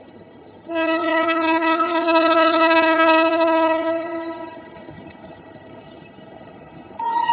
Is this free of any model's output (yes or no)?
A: no